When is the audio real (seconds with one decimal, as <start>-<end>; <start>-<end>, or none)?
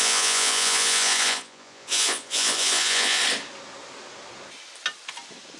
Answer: 3.2-5.6